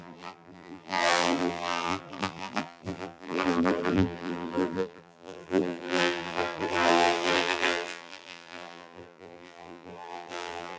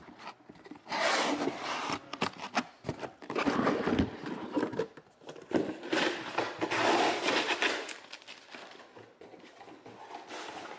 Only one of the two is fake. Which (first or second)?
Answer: first